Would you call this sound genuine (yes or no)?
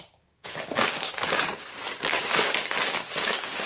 no